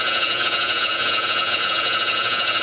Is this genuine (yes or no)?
no